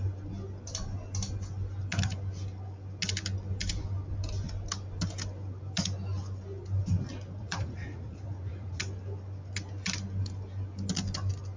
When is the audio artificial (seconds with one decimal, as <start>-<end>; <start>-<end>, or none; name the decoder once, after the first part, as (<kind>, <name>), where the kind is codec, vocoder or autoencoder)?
7.4-8.8 (vocoder, Vocos)